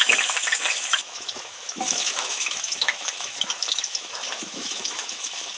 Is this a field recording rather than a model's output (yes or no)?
no